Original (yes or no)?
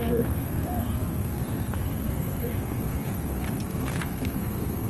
no